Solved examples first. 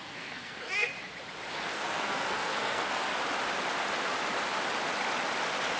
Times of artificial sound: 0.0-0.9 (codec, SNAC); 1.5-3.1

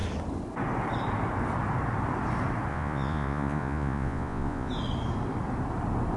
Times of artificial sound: 2.7-4.7 (vocoder, Vocos)

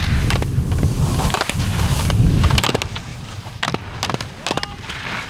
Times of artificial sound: 3.1-3.6 (vocoder, BigVGAN v2)